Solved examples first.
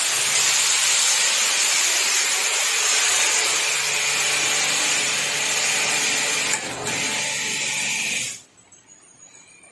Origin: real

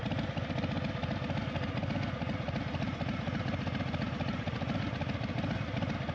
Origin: real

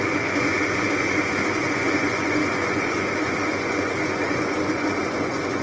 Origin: fake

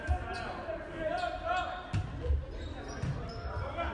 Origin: real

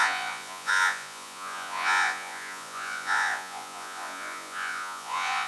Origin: fake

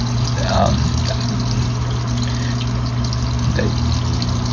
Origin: real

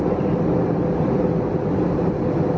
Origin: real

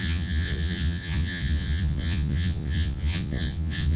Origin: fake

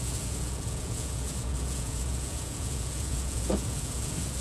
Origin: fake